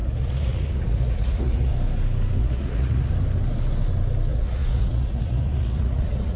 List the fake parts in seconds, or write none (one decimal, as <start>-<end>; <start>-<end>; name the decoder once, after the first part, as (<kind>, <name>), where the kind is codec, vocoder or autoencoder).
0.0-1.7 (vocoder, Vocos); 2.4-3.1; 4.3-6.4

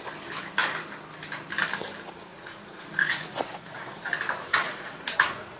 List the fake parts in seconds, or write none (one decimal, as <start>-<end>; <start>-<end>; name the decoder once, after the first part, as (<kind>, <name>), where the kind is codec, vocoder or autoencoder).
2.3-4.1 (vocoder, Vocos); 4.5-5.6

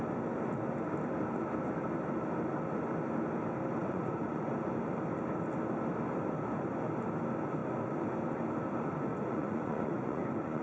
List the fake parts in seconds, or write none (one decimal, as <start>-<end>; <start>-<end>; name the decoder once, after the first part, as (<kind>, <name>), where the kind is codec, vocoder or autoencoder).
3.8-4.5 (vocoder, Vocos); 9.1-10.6

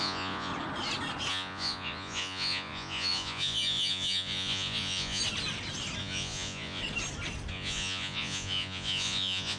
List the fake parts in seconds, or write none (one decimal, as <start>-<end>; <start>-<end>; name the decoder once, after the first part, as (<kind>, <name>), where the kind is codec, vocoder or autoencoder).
0.0-0.5 (vocoder, Vocos); 1.3-5.2; 6.0-6.8; 7.5-9.6

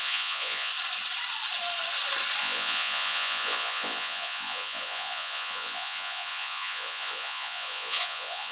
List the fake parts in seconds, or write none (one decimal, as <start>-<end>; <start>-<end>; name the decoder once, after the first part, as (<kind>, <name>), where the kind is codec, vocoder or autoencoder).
0.0-0.7 (vocoder, Vocos); 2.4-8.5

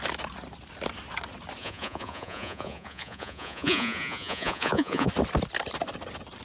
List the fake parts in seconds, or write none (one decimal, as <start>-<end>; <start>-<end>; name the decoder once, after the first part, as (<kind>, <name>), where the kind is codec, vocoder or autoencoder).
1.6-5.1 (vocoder, Vocos)

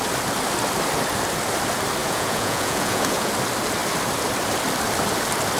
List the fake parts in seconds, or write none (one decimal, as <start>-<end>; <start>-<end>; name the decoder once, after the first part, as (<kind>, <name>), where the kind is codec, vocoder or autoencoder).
2.0-3.3 (vocoder, Vocos)